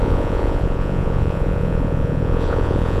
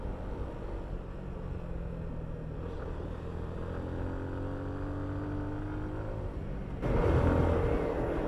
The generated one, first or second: first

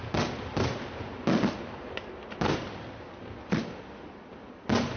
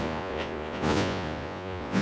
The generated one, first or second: second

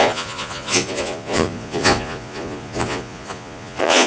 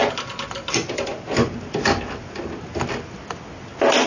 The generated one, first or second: first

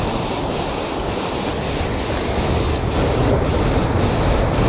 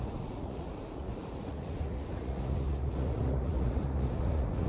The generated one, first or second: second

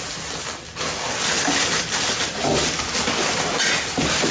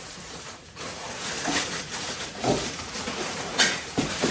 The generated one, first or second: second